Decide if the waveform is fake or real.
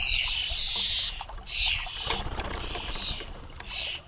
real